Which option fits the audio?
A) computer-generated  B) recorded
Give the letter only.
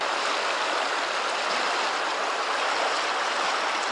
B